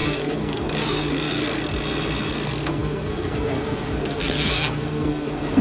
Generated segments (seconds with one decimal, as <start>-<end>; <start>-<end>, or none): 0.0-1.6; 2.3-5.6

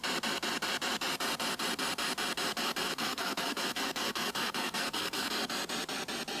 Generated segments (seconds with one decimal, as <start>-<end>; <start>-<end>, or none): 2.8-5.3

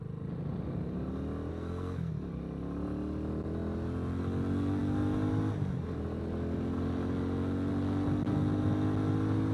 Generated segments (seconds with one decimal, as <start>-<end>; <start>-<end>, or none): 1.5-2.1

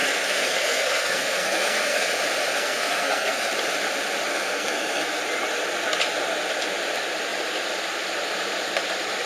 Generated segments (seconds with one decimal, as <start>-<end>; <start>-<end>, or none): 0.0-2.1; 2.5-3.5; 4.3-5.2

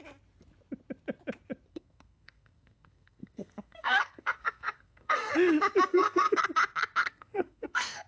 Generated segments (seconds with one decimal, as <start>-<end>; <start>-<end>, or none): 1.7-5.3; 5.9-6.4; 7.0-8.1

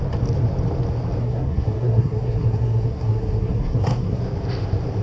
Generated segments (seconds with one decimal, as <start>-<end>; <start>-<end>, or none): 1.2-4.2

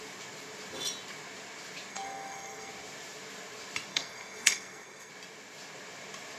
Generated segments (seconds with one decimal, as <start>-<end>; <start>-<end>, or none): 1.9-2.7; 3.9-5.1